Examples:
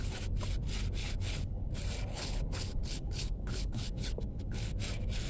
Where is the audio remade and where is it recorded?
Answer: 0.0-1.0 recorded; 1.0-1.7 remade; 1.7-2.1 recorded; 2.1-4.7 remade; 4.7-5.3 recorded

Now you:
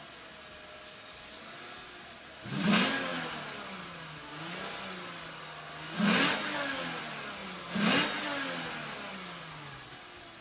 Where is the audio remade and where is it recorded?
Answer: 0.0-10.4 recorded

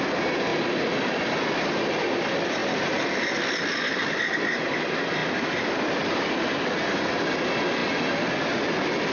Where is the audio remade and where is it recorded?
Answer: 0.0-0.5 recorded; 0.5-1.1 remade; 1.1-2.6 recorded; 2.6-4.2 remade; 4.2-5.2 recorded; 5.2-6.3 remade; 6.3-9.1 recorded